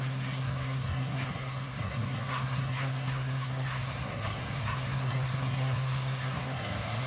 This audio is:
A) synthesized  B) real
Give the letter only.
A